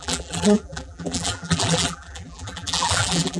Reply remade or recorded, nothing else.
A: remade